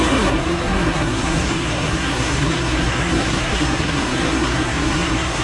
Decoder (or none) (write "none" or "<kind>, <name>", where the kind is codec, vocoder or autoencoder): codec, SNAC